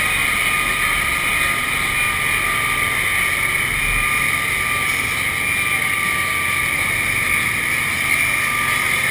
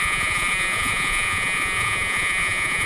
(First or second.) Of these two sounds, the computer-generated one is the second